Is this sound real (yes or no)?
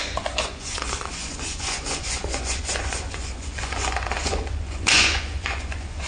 no